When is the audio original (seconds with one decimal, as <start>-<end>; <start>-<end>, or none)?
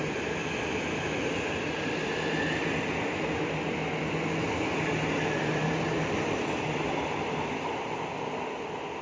0.0-9.0